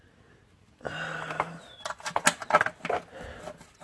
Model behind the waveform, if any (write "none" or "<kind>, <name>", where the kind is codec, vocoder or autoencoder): none